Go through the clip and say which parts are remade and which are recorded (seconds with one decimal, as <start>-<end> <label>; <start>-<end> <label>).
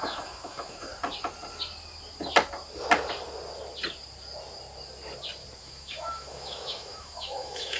0.0-0.9 remade; 0.9-5.6 recorded; 5.6-7.8 remade